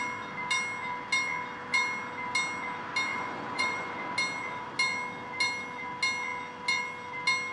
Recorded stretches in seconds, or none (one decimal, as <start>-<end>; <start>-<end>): 0.0-3.1; 3.9-7.5